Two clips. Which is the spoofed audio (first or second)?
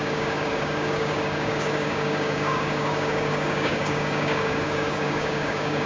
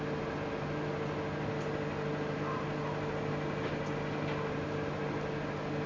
first